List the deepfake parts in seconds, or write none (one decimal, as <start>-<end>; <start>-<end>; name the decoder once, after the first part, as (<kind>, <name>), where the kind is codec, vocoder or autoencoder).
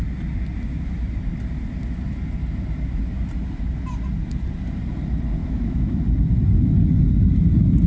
5.4-6.0 (autoencoder, DAC-VAE)